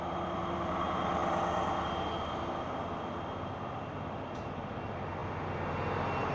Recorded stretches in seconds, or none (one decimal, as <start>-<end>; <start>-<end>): 0.0-6.3

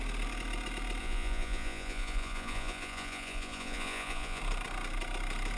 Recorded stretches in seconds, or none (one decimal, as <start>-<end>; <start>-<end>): 0.0-1.0; 4.4-5.6

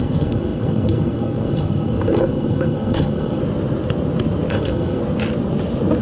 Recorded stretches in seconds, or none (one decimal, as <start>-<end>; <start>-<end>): 3.4-4.5; 5.0-6.0

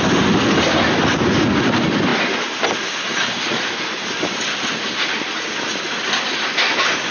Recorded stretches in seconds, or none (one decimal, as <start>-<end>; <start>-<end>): 0.0-3.1; 3.7-7.1

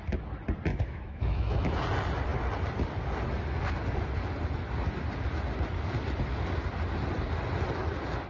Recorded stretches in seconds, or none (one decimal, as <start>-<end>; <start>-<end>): 0.0-0.7; 1.7-8.3